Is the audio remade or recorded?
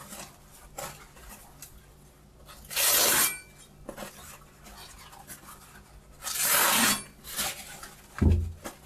recorded